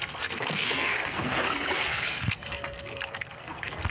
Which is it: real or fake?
fake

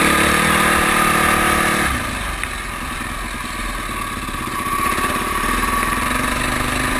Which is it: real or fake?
real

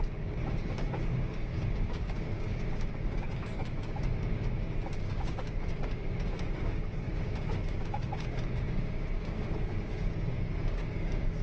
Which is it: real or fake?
fake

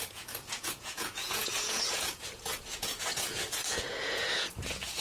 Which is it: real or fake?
fake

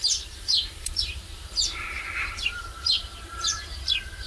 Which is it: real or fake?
fake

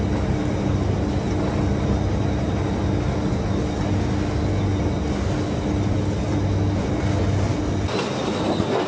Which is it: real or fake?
real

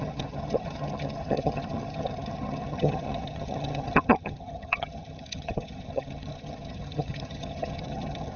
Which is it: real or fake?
fake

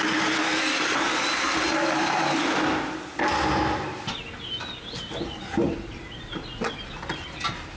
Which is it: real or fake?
real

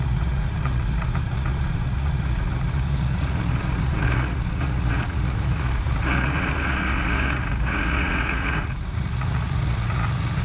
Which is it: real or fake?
fake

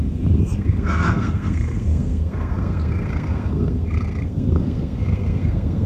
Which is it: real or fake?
fake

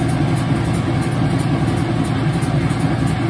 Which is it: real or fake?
real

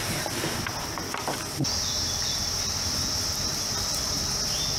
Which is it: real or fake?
real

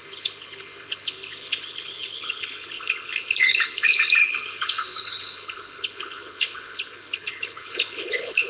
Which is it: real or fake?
fake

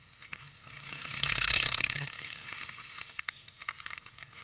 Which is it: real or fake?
fake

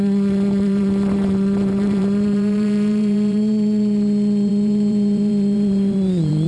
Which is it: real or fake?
fake